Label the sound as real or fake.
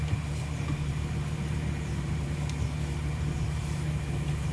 fake